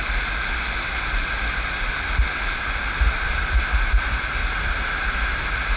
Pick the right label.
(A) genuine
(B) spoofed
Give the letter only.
A